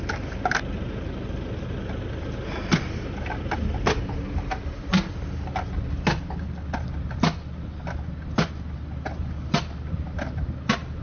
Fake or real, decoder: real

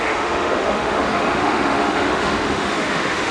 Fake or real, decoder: fake, autoencoder, DAC-VAE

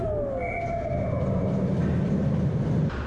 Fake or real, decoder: real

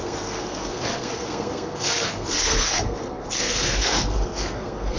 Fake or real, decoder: fake, codec, SNAC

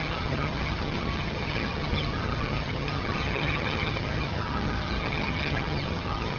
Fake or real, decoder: fake, vocoder, HiFi-GAN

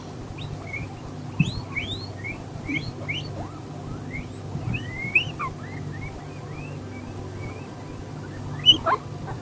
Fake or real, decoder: real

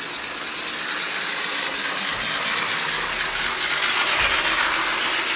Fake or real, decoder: real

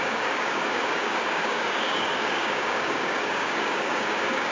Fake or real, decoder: fake, codec, DAC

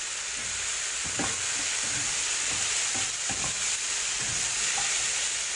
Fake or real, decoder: real